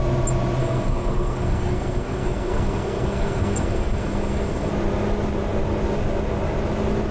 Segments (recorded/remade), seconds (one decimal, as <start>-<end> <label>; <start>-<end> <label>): 0.0-0.6 recorded; 0.6-4.7 remade; 4.7-7.1 recorded